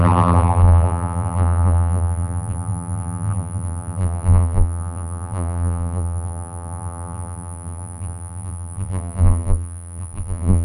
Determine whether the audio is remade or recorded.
remade